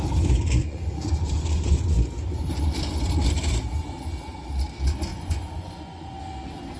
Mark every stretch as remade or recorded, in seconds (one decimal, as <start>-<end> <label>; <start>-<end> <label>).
0.0-0.6 recorded; 0.6-1.8 remade; 1.8-5.1 recorded; 5.1-6.2 remade; 6.2-6.8 recorded

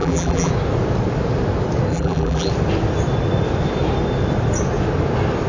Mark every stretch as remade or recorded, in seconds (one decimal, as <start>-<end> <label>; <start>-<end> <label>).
0.0-0.5 remade; 0.5-1.9 recorded; 1.9-2.5 remade; 2.5-5.5 recorded

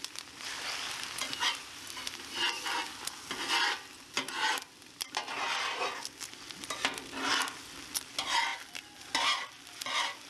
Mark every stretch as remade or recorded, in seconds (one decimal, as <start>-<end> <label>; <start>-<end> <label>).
0.0-10.3 recorded